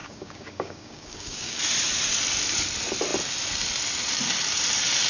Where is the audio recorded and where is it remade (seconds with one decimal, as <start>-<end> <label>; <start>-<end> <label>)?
0.0-1.6 remade; 1.6-5.1 recorded